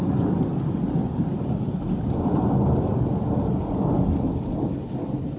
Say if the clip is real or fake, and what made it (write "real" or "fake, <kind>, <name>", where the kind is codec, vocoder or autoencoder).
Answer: real